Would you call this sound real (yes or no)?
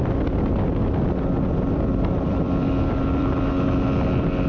yes